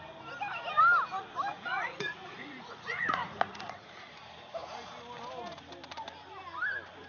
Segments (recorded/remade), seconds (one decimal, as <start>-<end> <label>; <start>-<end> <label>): 0.0-1.5 recorded; 1.5-4.1 remade; 4.1-7.1 recorded